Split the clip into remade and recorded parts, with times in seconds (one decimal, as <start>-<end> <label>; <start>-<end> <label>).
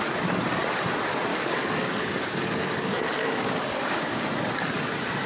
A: 0.0-1.3 recorded; 1.3-4.2 remade; 4.2-5.3 recorded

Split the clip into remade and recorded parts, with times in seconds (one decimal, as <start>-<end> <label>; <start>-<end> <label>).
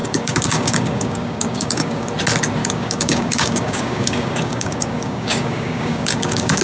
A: 0.0-2.1 remade; 2.1-2.6 recorded; 2.6-6.6 remade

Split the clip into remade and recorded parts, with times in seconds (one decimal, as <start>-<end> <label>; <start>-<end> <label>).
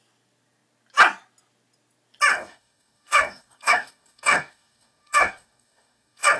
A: 0.0-2.3 recorded; 2.3-6.4 remade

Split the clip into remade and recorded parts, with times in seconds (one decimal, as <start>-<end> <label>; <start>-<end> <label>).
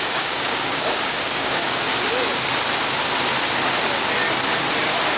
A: 0.0-1.9 remade; 1.9-5.2 recorded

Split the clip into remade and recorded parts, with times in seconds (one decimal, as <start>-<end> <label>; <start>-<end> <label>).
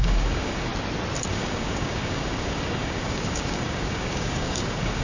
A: 0.0-0.7 remade; 0.7-1.3 recorded; 1.3-5.0 remade